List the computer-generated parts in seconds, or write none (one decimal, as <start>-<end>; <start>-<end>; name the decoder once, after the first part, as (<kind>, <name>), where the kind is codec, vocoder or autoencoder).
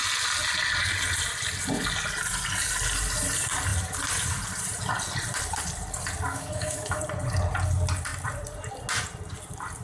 6.3-7.0 (autoencoder, DAC-VAE)